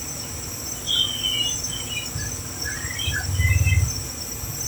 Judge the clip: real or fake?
real